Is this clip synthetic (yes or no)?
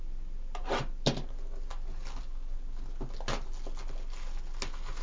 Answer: no